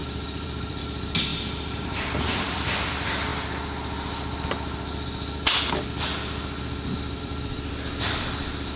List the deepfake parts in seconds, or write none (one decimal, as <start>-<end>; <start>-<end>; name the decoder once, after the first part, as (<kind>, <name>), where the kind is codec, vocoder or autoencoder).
0.0-1.3 (vocoder, BigVGAN v2); 1.8-3.3; 7.2-8.8